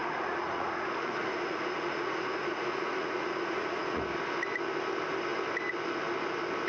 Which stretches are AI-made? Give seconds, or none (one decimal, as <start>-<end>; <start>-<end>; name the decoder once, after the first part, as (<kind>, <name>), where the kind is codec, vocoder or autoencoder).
0.0-4.0 (vocoder, Vocos)